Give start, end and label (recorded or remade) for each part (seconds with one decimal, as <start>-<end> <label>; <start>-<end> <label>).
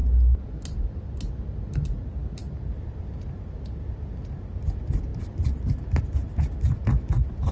0.0-2.4 recorded; 2.4-3.1 remade; 3.1-5.1 recorded; 5.1-6.0 remade; 6.0-7.5 recorded